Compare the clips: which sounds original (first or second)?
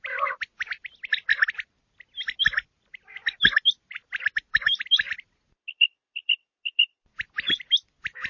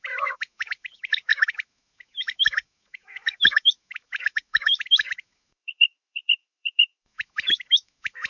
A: first